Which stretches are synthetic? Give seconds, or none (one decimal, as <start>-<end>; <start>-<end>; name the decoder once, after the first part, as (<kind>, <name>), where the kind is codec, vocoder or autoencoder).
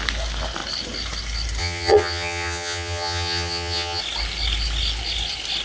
1.6-4.0 (vocoder, HiFi-GAN)